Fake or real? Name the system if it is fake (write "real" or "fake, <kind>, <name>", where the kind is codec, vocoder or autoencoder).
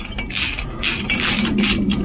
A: real